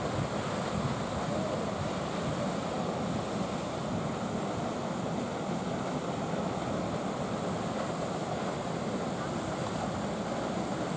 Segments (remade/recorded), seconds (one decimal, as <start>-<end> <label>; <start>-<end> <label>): 0.0-11.0 recorded